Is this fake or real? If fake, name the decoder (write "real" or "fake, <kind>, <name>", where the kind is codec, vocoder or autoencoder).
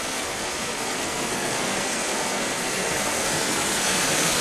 fake, codec, SNAC